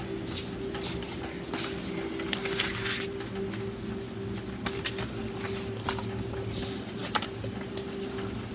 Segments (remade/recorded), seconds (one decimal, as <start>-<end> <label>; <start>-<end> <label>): 0.0-8.5 recorded